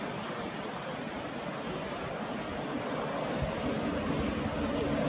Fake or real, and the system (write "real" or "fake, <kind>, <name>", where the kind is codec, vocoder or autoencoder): real